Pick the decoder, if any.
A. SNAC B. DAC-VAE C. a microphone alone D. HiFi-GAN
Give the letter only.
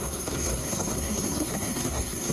A